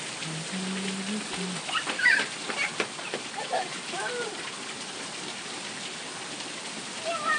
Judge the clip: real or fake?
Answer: real